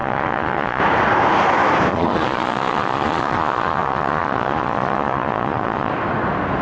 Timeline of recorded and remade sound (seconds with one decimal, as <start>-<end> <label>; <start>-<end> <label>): 0.0-0.8 remade; 0.8-1.9 recorded; 1.9-5.9 remade; 5.9-6.6 recorded